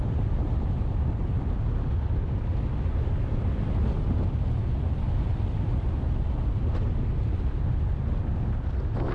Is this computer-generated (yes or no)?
no